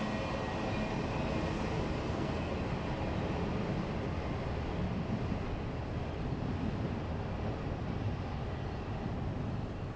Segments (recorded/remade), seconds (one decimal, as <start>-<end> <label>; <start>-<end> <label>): 0.0-2.0 recorded; 2.0-2.5 remade; 2.5-10.0 recorded